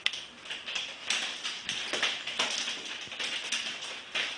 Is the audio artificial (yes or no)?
yes